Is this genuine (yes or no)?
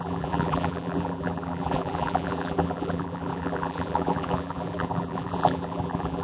no